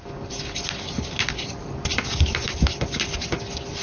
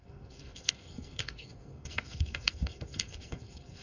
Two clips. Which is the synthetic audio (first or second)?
second